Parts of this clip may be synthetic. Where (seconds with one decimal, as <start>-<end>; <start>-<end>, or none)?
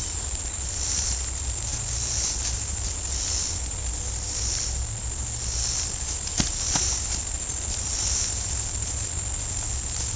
none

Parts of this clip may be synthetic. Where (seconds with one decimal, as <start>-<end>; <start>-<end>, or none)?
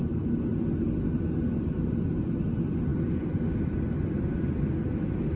none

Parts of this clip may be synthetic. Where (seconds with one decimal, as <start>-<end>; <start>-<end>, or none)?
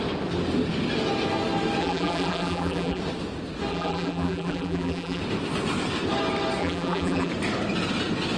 1.8-3.0; 3.7-5.2; 6.6-7.3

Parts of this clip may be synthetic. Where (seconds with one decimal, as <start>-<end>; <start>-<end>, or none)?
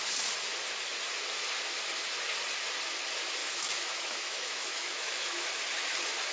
3.4-5.5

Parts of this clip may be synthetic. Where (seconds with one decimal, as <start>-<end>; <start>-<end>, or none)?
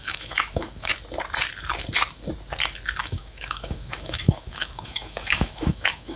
0.0-0.9; 3.0-6.2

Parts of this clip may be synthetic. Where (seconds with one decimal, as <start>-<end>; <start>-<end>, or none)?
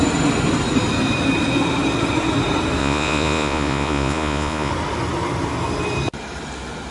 2.8-4.7